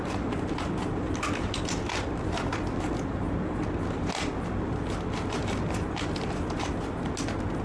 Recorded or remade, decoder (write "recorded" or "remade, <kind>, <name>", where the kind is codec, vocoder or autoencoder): recorded